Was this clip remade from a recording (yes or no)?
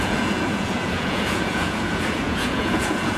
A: yes